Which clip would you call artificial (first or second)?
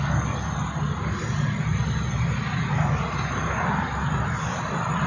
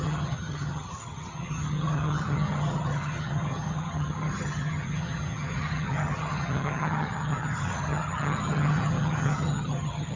second